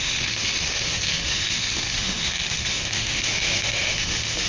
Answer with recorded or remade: remade